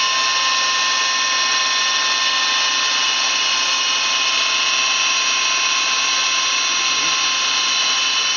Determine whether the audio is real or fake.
real